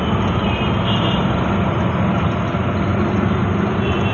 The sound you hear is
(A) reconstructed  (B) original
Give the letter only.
B